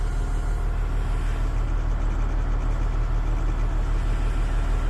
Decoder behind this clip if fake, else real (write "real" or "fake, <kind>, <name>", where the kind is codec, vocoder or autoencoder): real